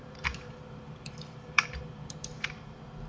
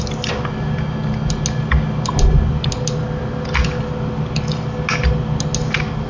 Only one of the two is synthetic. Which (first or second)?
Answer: first